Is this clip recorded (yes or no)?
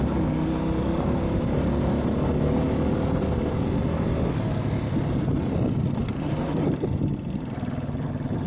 yes